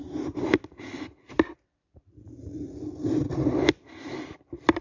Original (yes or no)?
no